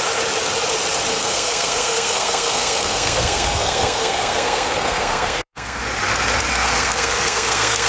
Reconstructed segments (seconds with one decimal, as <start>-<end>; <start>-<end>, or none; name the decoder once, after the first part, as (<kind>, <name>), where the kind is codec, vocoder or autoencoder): 1.1-5.8 (codec, SNAC); 6.5-7.9